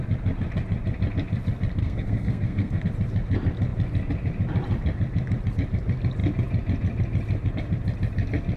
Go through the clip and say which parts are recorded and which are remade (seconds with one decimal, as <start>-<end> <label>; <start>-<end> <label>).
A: 0.0-1.8 recorded; 1.8-2.8 remade; 2.8-8.6 recorded